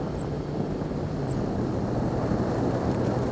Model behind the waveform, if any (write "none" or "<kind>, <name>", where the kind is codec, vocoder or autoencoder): none